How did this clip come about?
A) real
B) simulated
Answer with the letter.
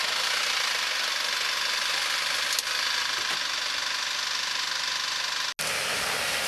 A